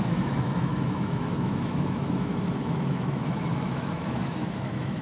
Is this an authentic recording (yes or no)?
no